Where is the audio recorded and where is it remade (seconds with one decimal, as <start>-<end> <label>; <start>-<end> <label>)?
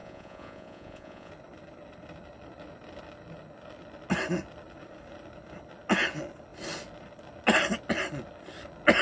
0.0-1.3 remade; 1.3-9.0 recorded